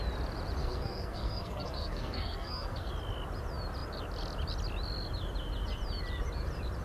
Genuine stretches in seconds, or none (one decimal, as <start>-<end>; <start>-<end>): 0.0-0.6; 2.9-6.8